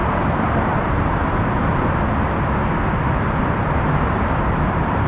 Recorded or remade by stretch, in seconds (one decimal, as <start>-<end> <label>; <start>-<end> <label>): 0.0-1.2 remade; 1.2-3.4 recorded; 3.4-5.1 remade

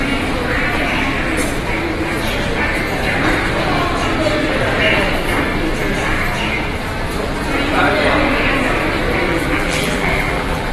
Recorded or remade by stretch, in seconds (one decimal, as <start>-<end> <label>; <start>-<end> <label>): 0.0-9.3 recorded; 9.3-10.7 remade

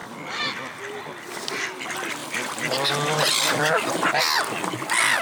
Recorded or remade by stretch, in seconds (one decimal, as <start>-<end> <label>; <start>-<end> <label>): 0.0-2.2 recorded; 2.2-4.2 remade; 4.2-5.2 recorded

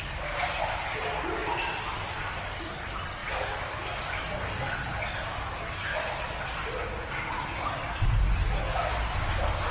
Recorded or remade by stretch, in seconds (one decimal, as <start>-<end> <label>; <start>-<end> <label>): 0.0-9.7 recorded